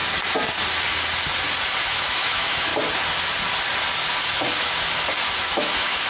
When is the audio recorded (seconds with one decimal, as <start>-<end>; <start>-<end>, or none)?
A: 0.0-1.8; 2.7-5.6